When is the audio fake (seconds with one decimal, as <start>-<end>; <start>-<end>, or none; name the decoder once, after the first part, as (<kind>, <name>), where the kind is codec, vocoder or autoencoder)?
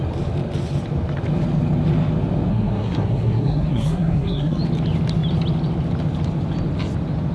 2.5-4.6 (codec, SNAC)